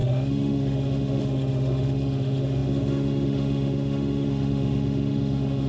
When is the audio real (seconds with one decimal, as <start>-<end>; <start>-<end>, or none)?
none